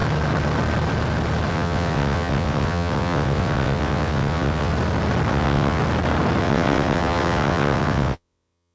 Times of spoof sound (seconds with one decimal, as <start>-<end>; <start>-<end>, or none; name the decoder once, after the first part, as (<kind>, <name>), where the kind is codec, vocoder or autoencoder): 1.5-4.7 (vocoder, WaveNeXt); 5.3-5.8; 6.4-8.7